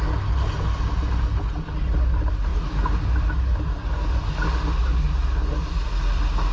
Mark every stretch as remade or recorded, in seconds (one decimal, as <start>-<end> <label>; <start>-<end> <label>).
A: 0.0-6.5 recorded